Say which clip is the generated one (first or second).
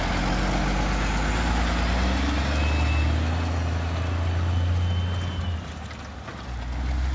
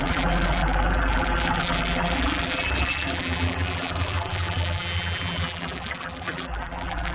second